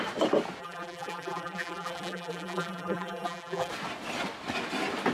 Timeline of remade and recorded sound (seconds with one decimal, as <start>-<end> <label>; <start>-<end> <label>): 0.0-0.6 recorded; 0.6-3.7 remade; 3.7-5.1 recorded